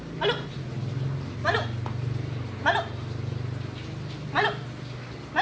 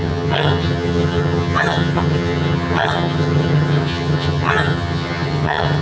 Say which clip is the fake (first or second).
second